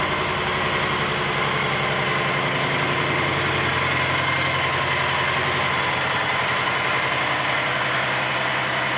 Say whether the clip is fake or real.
real